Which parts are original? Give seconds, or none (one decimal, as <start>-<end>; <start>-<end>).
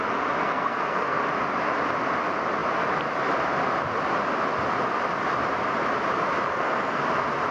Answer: 0.0-0.4; 1.2-6.5; 7.0-7.5